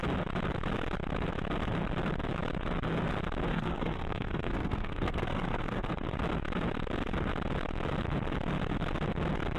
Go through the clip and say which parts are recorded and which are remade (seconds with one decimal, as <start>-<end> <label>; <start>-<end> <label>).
0.0-3.5 recorded; 3.5-5.9 remade; 5.9-9.6 recorded